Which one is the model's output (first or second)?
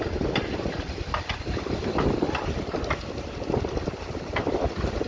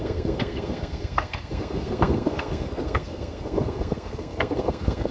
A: second